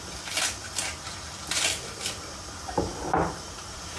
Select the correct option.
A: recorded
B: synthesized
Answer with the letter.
A